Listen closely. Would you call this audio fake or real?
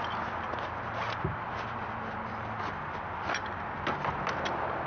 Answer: real